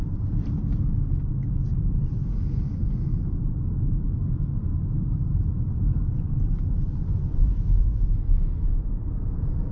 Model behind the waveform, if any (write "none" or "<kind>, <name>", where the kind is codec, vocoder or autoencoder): vocoder, BigVGAN v2